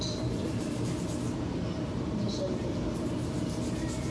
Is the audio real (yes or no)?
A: yes